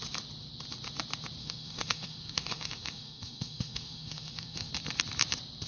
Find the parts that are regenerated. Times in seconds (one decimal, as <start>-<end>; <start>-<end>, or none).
1.4-4.7

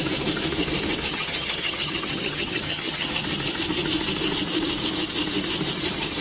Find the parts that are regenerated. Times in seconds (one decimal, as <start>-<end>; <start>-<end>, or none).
1.1-3.1